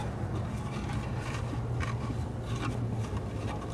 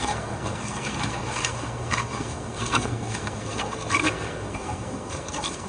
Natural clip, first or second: first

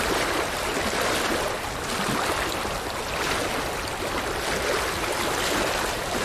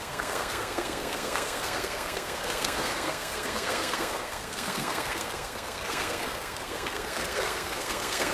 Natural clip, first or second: first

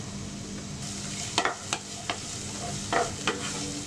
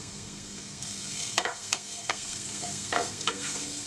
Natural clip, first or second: first